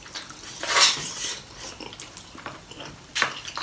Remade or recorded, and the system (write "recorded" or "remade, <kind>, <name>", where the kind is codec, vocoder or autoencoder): recorded